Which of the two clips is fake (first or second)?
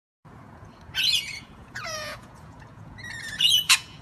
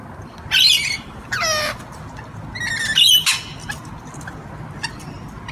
first